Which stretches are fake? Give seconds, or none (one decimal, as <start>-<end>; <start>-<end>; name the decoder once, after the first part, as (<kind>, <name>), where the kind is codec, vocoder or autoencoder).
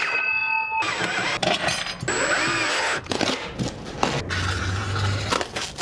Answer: 2.7-3.2 (codec, HILCodec)